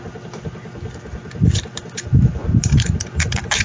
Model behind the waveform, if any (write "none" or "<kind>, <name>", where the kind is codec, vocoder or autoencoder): vocoder, BigVGAN v2